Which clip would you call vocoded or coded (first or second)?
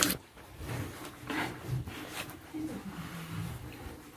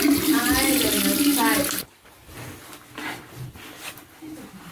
first